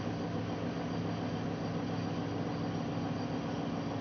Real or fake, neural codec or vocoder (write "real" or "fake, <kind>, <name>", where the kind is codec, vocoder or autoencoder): real